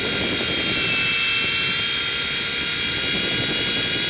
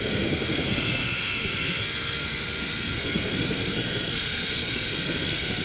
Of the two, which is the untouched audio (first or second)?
first